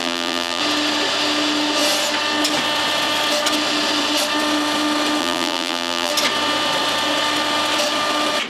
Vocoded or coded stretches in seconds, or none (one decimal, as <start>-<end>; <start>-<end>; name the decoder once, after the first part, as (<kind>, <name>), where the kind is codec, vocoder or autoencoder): 0.0-0.6 (vocoder, BigVGAN v2); 5.2-6.1